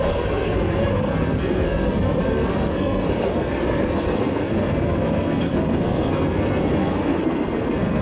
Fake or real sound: fake